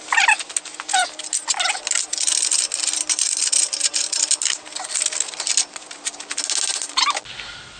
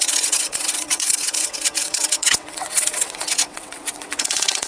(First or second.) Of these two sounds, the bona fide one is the first